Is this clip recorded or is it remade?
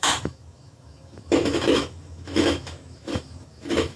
remade